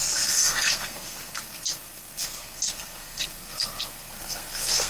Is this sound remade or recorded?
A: remade